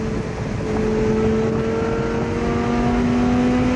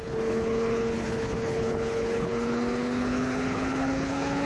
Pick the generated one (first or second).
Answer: second